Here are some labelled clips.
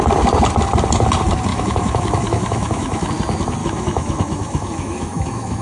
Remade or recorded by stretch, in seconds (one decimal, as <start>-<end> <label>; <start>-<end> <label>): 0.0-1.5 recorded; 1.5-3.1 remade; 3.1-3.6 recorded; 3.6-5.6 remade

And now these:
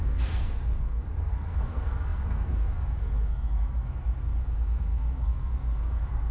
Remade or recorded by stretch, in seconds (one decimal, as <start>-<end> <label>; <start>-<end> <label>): 0.0-6.3 remade

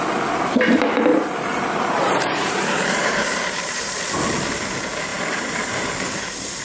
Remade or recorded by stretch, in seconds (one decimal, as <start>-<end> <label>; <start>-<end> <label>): 0.0-1.1 recorded; 1.1-4.0 remade; 4.0-5.1 recorded; 5.1-5.7 remade; 5.7-6.6 recorded